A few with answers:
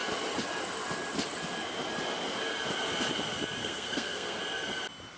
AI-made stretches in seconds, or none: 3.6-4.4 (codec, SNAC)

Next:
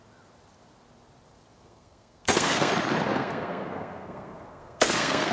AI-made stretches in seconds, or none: 1.5-2.7 (codec, SNAC); 3.1-5.3

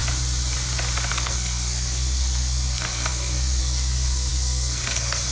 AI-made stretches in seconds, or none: 1.1-5.3 (codec, SNAC)

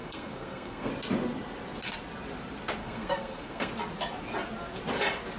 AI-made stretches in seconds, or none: 0.0-0.9 (codec, SNAC); 2.8-3.7

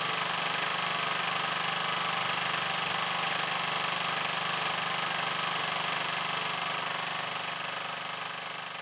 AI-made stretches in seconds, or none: none

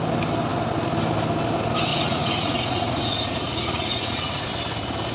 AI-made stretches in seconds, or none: 1.9-4.5 (vocoder, Vocos)

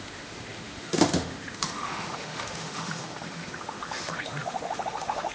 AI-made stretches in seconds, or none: 0.0-5.3 (autoencoder, DAC-VAE)

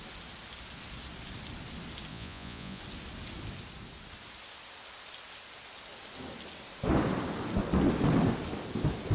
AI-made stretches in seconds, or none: 2.1-2.8 (vocoder, Vocos)